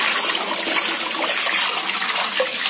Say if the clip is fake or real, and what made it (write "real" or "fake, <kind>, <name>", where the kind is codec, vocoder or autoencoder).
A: real